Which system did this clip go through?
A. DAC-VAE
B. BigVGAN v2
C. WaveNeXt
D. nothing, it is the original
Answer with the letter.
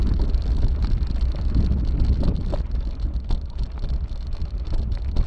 D